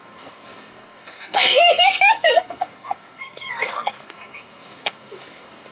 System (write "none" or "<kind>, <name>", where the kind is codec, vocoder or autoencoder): codec, SNAC